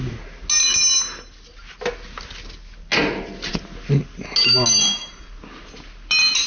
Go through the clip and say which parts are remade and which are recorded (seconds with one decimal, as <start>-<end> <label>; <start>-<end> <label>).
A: 0.0-6.5 recorded